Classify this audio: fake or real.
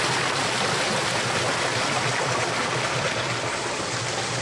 real